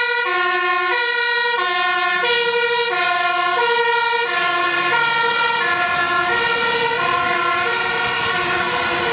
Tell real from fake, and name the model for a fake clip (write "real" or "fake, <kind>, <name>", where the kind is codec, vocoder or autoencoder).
real